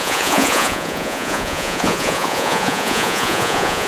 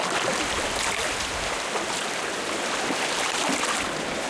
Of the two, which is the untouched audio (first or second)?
second